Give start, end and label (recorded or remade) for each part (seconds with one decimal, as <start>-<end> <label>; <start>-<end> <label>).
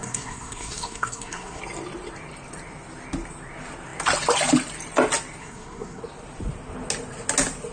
0.0-1.6 remade; 1.6-5.4 recorded; 5.4-6.0 remade; 6.0-7.7 recorded